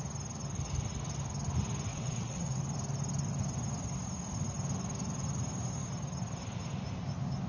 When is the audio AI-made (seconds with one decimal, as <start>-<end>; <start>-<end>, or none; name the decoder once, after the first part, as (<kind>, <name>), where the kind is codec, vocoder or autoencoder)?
1.9-2.6 (vocoder, WaveNeXt)